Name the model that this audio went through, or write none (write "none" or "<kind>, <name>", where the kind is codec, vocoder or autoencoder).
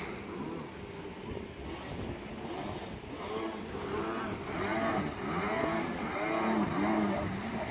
none